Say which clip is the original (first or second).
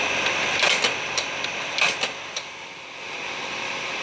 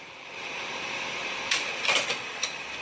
first